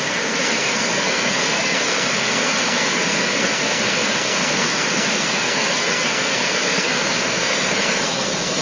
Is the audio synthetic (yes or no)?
yes